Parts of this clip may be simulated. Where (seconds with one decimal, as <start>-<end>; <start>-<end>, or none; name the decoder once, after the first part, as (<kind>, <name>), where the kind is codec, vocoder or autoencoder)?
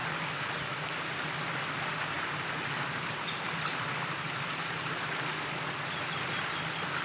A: none